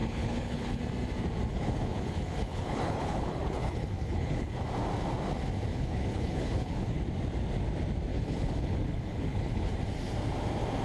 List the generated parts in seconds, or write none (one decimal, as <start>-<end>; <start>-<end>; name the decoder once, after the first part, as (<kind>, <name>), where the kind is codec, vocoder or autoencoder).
0.0-0.8 (codec, HILCodec); 1.5-4.6; 5.7-7.0; 8.1-9.7